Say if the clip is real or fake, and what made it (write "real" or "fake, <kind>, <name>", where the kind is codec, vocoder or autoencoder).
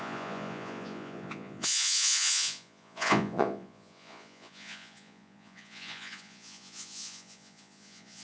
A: fake, vocoder, Vocos